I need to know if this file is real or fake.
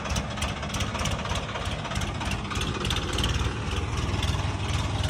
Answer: real